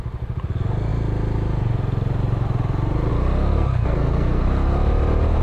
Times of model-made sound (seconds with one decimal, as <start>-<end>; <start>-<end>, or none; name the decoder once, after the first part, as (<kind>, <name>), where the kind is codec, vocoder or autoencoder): 3.5-4.4 (codec, SNAC)